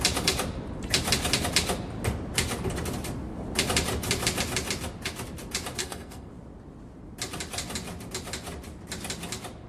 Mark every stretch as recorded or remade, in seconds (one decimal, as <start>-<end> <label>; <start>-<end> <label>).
0.0-5.8 recorded; 5.8-6.3 remade; 6.3-9.7 recorded